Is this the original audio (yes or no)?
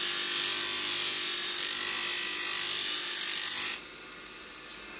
yes